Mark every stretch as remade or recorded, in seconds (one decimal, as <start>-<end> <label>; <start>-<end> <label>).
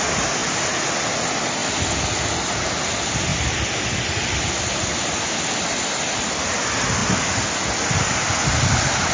0.0-9.1 recorded